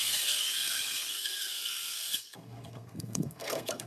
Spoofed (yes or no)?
yes